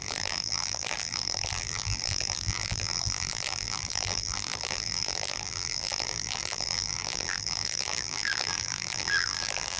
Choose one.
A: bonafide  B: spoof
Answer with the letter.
B